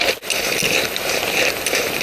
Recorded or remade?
recorded